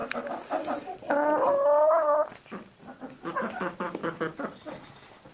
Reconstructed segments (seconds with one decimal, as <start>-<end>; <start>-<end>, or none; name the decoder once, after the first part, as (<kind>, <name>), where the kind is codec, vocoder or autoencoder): none